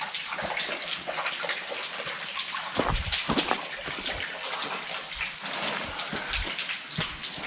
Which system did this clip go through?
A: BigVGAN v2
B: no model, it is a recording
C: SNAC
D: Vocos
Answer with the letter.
B